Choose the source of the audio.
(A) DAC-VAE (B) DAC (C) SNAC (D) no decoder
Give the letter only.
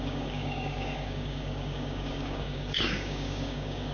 B